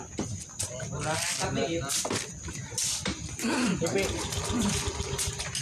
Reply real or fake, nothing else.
fake